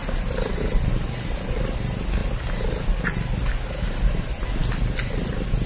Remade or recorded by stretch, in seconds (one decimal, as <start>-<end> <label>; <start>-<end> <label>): 0.0-5.7 recorded